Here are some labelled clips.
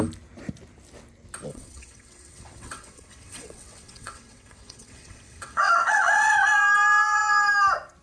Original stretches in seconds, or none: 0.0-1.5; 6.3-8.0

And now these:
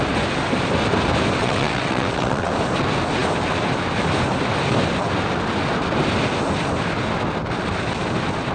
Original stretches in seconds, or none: 0.0-1.4; 2.5-8.5

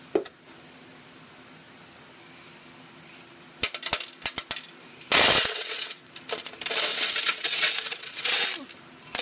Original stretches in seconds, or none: 0.0-5.4; 6.1-6.9; 8.5-9.2

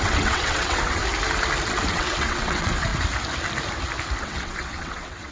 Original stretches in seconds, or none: 1.0-1.9; 2.9-4.2

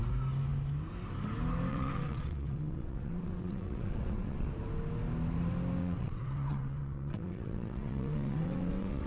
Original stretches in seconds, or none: 0.0-1.7; 4.5-5.8

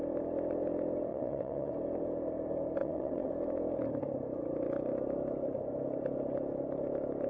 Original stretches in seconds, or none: 0.0-1.1; 1.7-2.8; 3.3-7.3

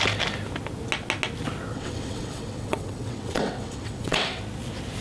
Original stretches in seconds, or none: 0.0-1.7; 4.4-5.0